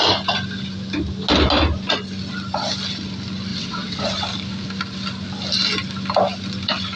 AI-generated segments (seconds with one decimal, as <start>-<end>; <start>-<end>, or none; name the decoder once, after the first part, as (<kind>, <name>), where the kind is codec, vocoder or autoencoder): 3.5-4.0 (vocoder, WaveNeXt)